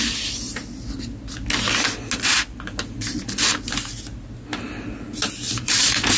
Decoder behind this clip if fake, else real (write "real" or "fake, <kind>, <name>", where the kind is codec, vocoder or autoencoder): real